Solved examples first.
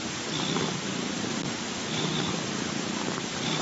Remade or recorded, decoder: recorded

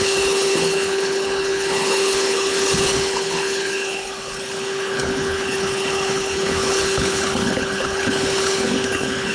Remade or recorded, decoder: remade, codec, HILCodec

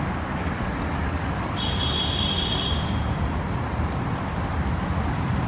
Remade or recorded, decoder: remade, vocoder, BigVGAN v2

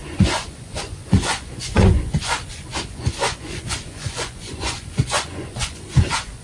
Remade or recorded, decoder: remade, vocoder, Vocos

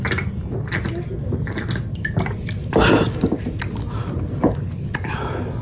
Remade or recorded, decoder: recorded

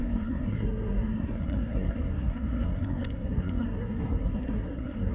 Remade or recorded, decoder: remade, codec, SNAC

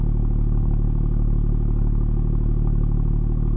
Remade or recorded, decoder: recorded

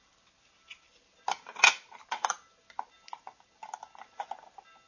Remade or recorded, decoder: recorded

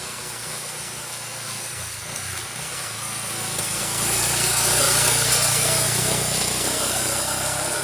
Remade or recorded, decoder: remade, codec, SNAC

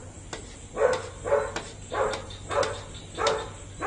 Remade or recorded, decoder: recorded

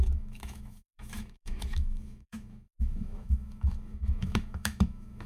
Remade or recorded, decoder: remade, autoencoder, DAC-VAE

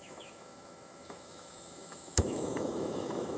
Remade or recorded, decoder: remade, autoencoder, DAC-VAE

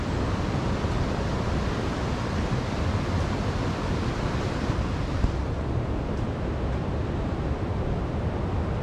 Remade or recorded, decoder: recorded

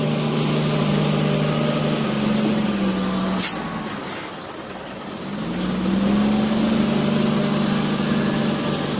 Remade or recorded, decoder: recorded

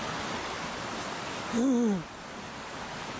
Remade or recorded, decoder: recorded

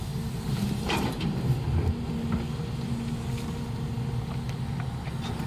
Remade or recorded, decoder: recorded